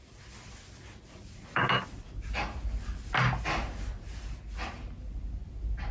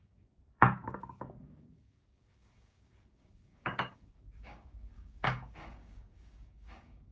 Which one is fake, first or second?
second